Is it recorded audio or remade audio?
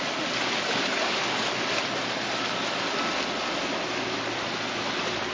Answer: recorded